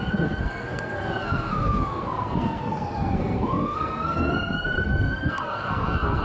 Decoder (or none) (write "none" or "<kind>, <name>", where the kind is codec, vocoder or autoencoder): codec, SNAC